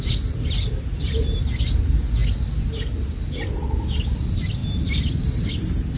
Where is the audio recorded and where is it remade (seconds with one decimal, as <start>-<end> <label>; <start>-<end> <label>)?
0.0-6.0 recorded